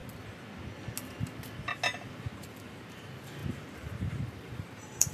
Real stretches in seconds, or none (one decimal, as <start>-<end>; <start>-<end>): 0.0-2.1